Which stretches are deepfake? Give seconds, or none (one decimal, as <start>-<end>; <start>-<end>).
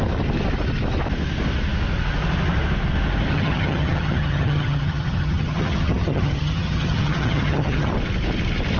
3.3-7.9